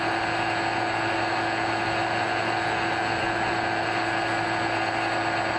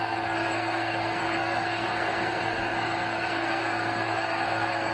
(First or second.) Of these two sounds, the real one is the first